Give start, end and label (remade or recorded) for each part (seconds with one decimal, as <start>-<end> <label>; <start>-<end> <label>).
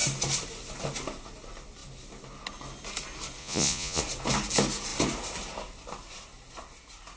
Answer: 0.0-3.4 recorded; 3.4-4.0 remade; 4.0-7.2 recorded